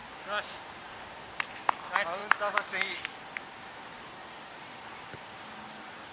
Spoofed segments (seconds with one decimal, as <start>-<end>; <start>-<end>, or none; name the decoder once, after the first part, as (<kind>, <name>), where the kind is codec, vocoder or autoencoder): none